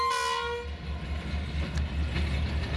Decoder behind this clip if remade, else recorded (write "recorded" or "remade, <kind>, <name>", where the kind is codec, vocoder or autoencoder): recorded